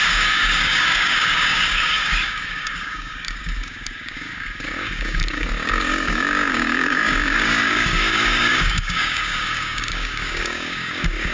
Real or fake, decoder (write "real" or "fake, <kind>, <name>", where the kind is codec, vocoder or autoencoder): fake, codec, DAC